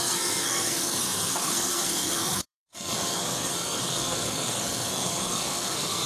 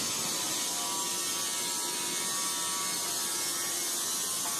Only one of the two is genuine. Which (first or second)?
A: second